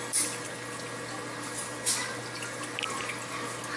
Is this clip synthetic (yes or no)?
no